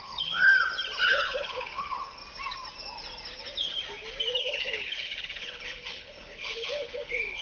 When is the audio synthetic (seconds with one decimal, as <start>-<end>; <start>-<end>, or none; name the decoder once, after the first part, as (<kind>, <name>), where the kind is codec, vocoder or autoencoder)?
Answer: 0.0-0.5 (codec, HILCodec); 1.0-2.2; 4.4-7.4

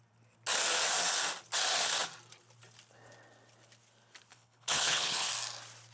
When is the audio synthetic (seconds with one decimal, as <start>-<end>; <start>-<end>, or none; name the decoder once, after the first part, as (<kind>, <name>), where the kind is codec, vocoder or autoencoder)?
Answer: 4.3-5.3 (codec, HILCodec)

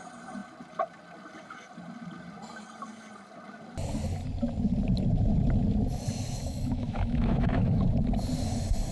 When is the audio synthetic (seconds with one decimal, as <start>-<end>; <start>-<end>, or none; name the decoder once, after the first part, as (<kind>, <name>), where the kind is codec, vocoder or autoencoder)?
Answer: 6.4-7.8 (autoencoder, DAC-VAE)

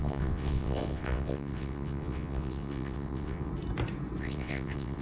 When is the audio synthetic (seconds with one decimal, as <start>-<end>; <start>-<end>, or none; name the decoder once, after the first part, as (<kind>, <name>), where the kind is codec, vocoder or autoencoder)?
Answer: 0.0-3.5 (vocoder, WaveNeXt); 4.2-5.0

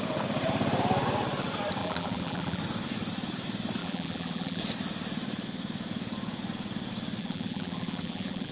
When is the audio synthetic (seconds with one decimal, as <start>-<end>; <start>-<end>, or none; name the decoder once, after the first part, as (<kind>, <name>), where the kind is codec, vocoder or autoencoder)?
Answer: 1.8-2.6 (vocoder, BigVGAN v2); 3.8-4.6; 7.2-8.5

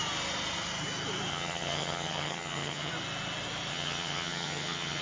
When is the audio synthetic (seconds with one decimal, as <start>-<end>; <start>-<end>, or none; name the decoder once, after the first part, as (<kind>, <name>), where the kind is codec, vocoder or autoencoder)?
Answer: 1.3-2.9 (vocoder, HiFi-GAN); 3.7-5.0

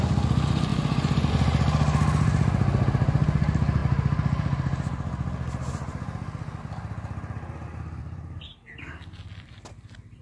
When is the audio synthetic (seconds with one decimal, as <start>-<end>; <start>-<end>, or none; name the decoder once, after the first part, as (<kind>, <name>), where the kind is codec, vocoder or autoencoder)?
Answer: 0.7-1.3 (vocoder, BigVGAN v2); 8.0-8.7